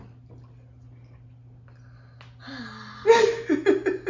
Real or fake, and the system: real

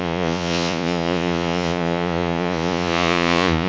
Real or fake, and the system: fake, vocoder, Vocos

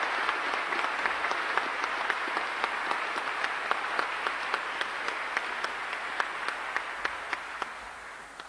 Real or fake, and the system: real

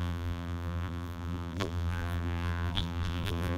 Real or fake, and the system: fake, vocoder, BigVGAN v2